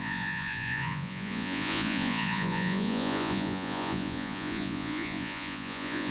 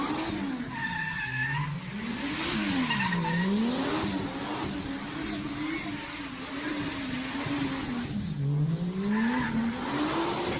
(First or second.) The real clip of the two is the second